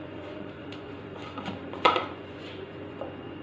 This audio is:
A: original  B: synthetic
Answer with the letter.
B